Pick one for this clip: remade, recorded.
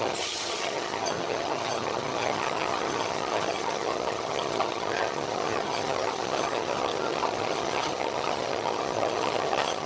remade